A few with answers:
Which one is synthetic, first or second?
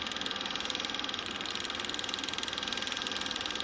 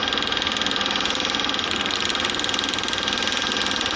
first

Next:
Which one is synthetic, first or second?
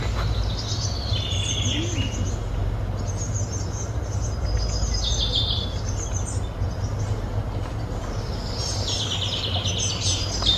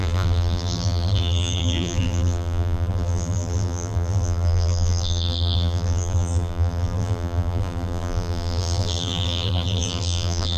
second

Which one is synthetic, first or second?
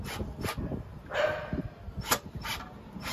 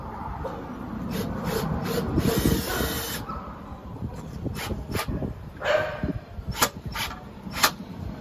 second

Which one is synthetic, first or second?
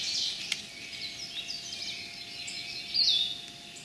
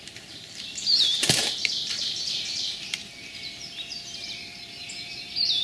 second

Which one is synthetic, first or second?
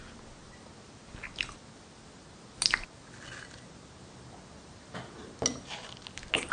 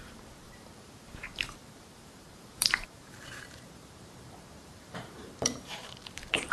second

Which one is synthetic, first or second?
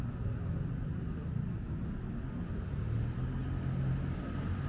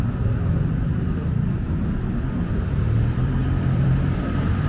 second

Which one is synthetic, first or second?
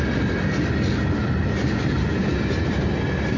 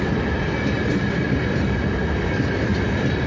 second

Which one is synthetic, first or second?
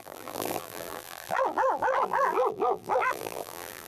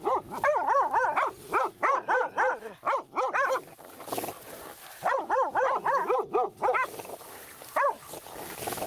first